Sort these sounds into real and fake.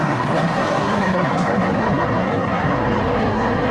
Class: fake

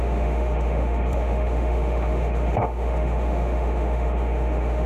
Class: fake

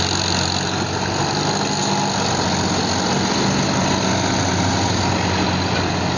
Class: real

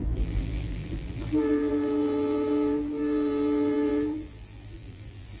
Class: fake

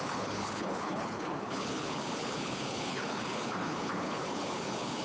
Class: fake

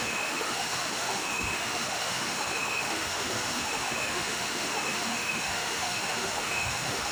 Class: fake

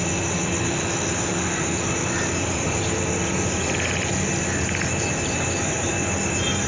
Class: real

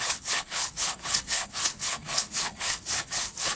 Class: fake